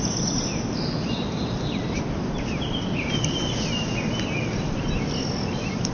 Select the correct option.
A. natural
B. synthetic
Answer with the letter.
A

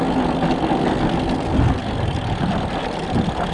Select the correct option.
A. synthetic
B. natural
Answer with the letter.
B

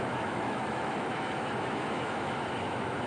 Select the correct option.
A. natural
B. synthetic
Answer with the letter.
B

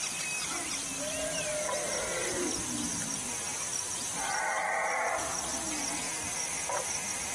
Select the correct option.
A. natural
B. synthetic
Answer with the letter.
A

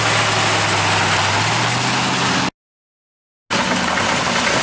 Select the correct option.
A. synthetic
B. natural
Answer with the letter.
B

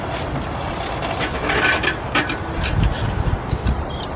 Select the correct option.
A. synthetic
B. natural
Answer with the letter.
B